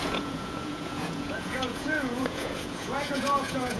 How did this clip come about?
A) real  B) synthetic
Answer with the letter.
B